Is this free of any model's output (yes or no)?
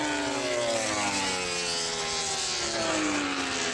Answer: yes